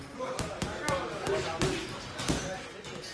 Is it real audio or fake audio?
real